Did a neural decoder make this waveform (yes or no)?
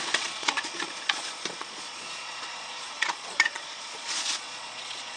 yes